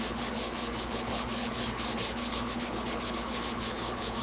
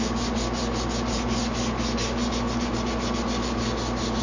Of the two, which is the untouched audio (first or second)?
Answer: second